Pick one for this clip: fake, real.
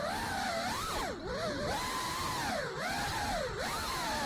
fake